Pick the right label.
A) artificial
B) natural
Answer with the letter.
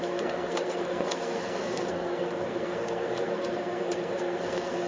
A